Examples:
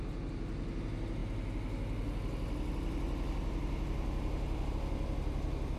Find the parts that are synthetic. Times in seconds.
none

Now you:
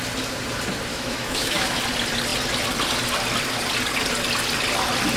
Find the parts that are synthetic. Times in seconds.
0.9-1.8 (autoencoder, DAC-VAE)

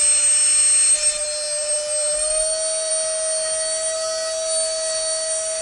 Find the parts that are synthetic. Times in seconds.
none

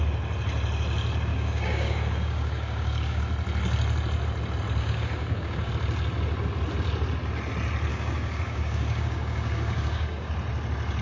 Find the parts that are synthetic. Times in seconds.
1.3-3.2 (codec, DAC); 4.8-5.7; 7.9-10.3

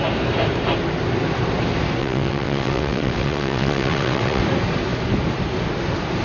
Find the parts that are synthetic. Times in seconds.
2.0-4.4 (vocoder, WaveNeXt)